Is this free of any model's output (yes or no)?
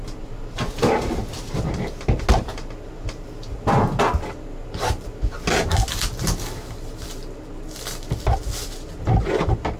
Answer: yes